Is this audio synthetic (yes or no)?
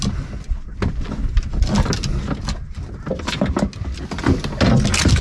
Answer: no